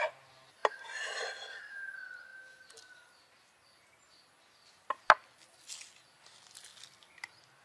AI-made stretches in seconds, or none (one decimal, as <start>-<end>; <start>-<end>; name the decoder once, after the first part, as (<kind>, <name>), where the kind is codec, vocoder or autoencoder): 0.6-1.2 (vocoder, BigVGAN v2)